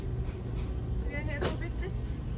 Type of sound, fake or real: real